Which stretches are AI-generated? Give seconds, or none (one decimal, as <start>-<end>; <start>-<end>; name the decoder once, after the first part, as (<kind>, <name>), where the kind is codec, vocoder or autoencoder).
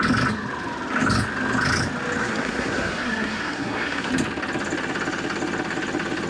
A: 2.2-4.1 (codec, SNAC)